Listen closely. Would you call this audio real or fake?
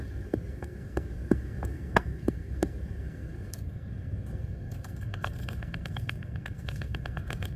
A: fake